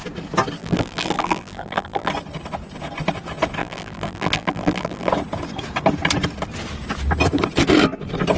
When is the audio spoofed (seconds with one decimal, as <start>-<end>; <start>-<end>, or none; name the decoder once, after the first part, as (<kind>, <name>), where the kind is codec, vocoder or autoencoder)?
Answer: 0.6-2.1 (vocoder, BigVGAN v2); 3.6-5.1